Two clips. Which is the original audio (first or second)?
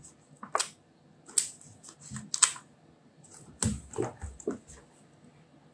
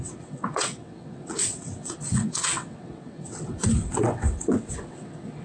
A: first